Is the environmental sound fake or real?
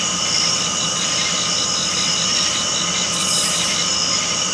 fake